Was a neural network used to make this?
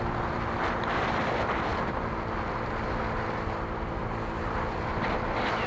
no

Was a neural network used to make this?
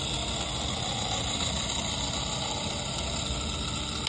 no